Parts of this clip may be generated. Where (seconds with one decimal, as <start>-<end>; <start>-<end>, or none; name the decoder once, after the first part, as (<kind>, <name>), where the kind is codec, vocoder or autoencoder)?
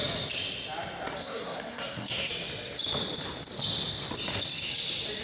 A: 1.2-2.3 (codec, SNAC)